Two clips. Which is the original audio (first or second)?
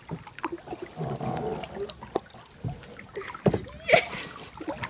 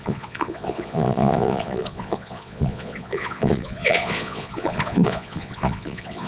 first